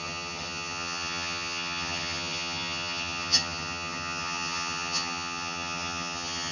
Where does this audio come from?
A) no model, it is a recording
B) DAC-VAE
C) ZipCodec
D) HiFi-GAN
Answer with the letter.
D